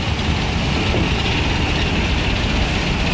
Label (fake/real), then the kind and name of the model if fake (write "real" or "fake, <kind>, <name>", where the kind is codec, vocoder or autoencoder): real